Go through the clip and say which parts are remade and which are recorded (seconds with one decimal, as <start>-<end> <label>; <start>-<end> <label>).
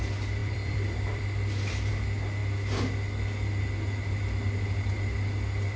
0.0-0.4 recorded; 0.4-1.9 remade; 1.9-5.8 recorded